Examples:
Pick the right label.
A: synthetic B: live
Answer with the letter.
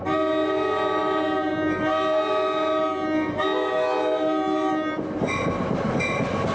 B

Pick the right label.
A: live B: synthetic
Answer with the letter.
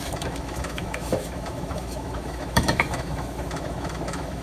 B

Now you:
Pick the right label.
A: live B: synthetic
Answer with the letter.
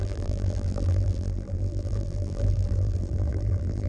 B